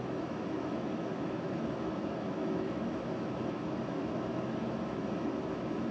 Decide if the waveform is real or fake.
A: fake